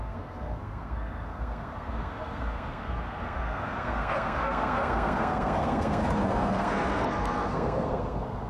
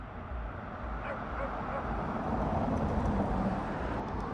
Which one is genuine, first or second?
second